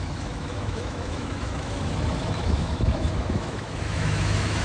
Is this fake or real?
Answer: fake